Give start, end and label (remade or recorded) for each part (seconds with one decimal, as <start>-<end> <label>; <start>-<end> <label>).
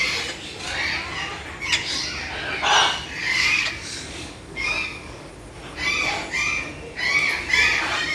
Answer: 0.0-3.2 recorded; 3.2-5.3 remade; 5.3-8.1 recorded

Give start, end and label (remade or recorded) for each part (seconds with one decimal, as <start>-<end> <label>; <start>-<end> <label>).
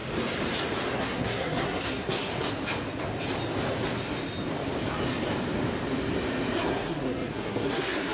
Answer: 0.0-1.0 recorded; 1.0-2.3 remade; 2.3-6.6 recorded; 6.6-8.1 remade